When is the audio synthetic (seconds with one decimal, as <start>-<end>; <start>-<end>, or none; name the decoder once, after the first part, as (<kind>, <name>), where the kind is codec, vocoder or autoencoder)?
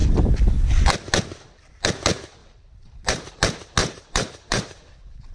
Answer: 2.4-3.3 (vocoder, BigVGAN v2); 3.8-4.8